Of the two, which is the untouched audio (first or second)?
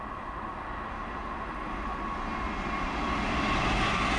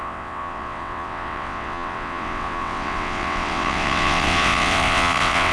first